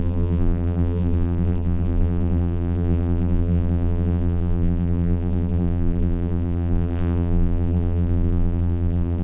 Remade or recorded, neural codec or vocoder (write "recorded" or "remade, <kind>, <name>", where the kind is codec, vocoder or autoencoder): remade, vocoder, BigVGAN v2